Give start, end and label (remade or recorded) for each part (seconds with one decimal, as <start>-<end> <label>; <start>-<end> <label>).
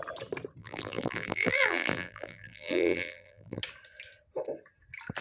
0.0-0.6 recorded; 0.6-3.6 remade; 3.6-5.2 recorded